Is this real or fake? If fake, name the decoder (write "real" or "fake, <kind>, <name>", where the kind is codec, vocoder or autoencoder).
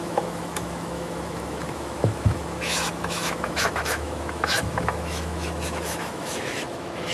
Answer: fake, autoencoder, DAC-VAE